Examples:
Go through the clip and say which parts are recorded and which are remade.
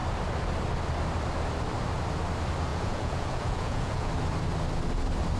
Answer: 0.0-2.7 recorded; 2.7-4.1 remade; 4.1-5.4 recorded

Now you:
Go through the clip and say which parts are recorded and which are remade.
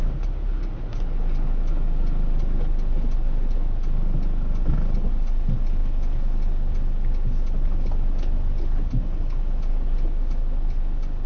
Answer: 0.0-11.3 recorded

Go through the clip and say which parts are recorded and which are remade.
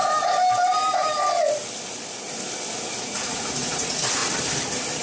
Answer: 0.0-3.0 recorded; 3.0-4.2 remade; 4.2-5.0 recorded